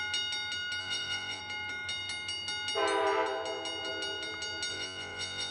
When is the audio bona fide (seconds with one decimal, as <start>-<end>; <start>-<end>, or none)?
0.0-0.8; 1.4-4.7